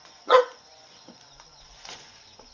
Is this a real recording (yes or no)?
no